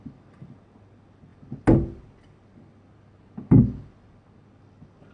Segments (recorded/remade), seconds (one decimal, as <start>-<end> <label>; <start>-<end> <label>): 0.0-5.1 recorded